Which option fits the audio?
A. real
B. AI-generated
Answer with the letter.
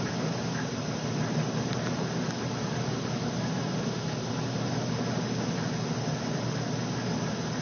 A